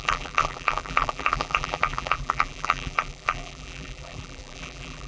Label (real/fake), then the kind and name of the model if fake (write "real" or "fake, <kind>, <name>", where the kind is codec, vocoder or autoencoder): fake, vocoder, BigVGAN v2